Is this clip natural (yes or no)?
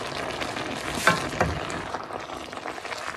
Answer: yes